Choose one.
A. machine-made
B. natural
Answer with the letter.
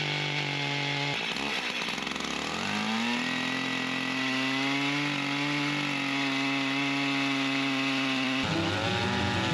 B